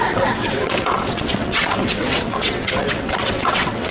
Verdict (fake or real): fake